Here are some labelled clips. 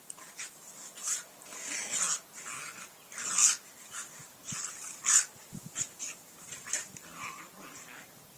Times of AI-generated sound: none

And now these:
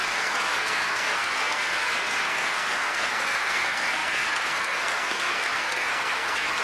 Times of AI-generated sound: 0.0-6.6 (codec, SNAC)

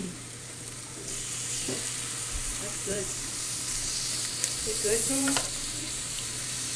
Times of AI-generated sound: 0.0-1.8 (vocoder, BigVGAN v2); 2.5-6.8

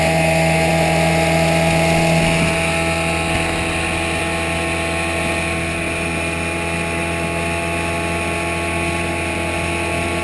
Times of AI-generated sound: none

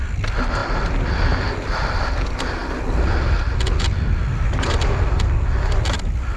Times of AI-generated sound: none